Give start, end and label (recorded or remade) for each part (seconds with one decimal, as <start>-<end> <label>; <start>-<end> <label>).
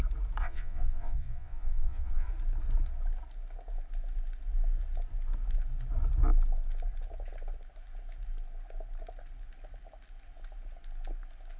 0.0-0.4 recorded; 0.4-2.3 remade; 2.3-11.6 recorded